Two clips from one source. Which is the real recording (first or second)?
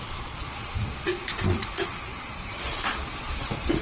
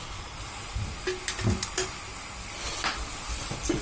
second